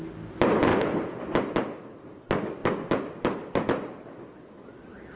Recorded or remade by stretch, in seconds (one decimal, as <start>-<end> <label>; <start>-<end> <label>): 0.0-0.7 recorded; 0.7-1.2 remade; 1.2-5.2 recorded